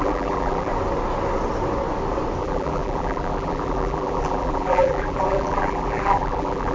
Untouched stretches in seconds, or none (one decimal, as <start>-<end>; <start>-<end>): 0.7-2.4